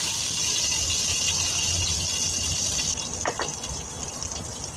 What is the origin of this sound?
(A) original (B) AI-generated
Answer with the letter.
A